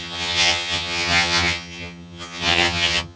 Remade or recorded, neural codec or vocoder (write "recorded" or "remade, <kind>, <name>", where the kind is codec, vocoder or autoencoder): remade, vocoder, HiFi-GAN